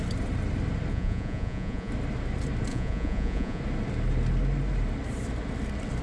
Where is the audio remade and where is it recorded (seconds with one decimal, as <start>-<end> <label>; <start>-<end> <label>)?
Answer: 0.0-0.9 recorded; 0.9-1.9 remade; 1.9-2.7 recorded; 2.7-3.6 remade; 3.6-6.0 recorded